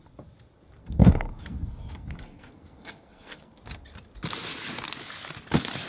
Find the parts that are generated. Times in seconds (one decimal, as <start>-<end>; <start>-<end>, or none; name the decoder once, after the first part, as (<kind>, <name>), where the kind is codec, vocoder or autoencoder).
0.8-3.6 (codec, SNAC)